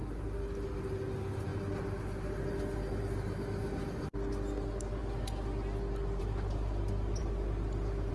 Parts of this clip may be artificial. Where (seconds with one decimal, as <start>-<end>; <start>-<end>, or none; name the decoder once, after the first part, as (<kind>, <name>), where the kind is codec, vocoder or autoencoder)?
none